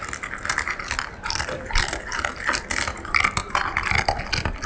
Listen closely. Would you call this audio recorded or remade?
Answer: recorded